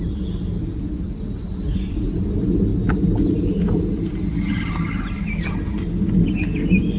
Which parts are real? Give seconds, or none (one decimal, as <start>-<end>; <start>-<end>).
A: 0.0-7.0

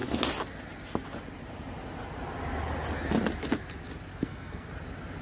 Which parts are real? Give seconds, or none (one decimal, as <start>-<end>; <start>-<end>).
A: 0.0-4.1; 4.7-5.2

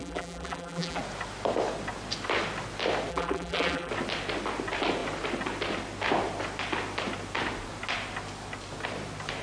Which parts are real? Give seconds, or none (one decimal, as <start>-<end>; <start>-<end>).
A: 1.0-3.1; 3.9-9.4

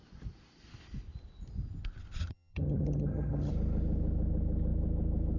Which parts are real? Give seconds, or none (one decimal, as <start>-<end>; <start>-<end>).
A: 0.0-2.2; 3.5-5.4

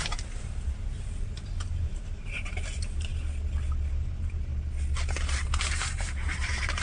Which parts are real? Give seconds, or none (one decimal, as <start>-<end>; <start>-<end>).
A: 3.1-3.9; 4.5-5.6

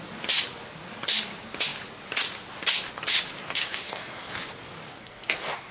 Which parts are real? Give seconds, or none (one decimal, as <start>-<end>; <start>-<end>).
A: 0.0-3.4; 4.3-4.9

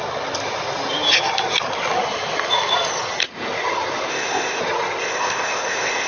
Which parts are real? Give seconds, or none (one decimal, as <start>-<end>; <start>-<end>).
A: 0.0-4.1; 4.6-5.0